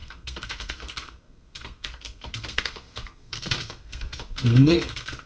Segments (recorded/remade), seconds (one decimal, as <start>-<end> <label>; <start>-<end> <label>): 0.0-5.3 remade